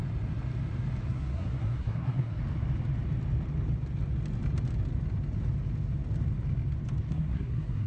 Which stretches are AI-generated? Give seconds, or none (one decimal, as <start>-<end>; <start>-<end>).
1.1-2.4; 7.1-7.9